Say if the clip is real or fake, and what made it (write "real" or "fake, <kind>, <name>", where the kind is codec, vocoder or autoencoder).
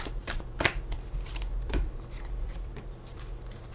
fake, vocoder, BigVGAN v2